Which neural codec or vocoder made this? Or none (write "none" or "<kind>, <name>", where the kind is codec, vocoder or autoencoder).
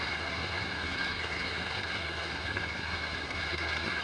codec, SNAC